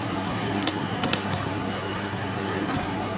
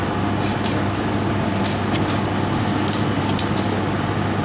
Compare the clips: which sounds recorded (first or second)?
second